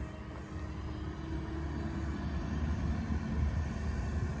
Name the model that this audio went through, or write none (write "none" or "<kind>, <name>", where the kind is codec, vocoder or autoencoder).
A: none